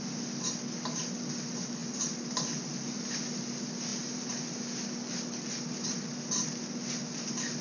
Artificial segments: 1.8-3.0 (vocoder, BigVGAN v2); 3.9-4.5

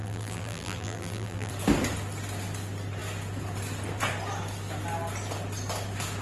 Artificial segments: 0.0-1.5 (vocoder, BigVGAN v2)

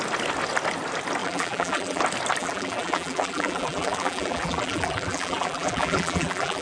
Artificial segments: 1.2-2.0 (vocoder, BigVGAN v2); 2.4-6.6

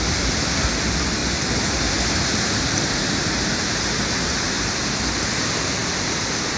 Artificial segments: 1.2-4.5 (vocoder, BigVGAN v2); 5.8-6.6